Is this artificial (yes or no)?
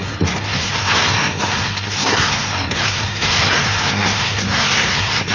yes